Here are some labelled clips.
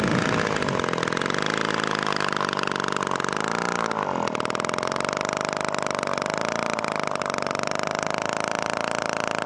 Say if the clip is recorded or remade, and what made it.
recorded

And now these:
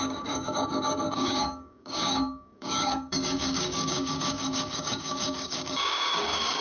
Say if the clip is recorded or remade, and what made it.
remade, codec, DAC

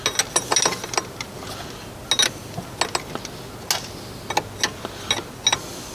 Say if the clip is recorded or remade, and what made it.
recorded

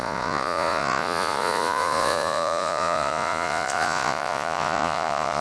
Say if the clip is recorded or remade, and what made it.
remade, vocoder, Vocos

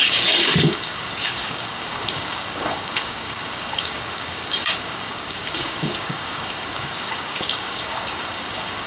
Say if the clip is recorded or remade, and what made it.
remade, codec, DAC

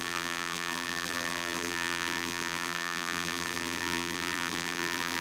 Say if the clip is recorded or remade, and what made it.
remade, vocoder, BigVGAN v2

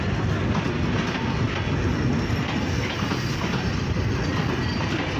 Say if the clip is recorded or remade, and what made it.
recorded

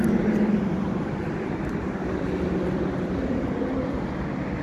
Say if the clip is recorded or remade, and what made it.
recorded